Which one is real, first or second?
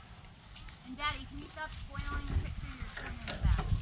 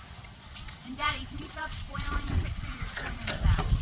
first